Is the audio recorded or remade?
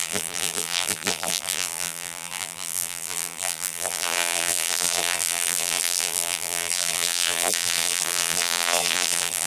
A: remade